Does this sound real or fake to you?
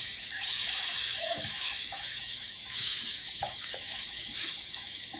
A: fake